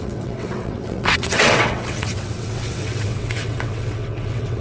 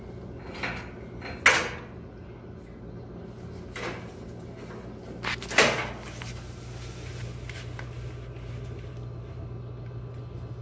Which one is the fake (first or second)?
first